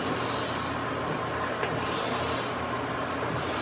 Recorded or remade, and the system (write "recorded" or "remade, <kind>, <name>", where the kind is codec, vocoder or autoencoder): recorded